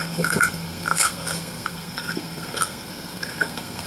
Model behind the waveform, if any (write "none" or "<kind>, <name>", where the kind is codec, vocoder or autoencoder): codec, SNAC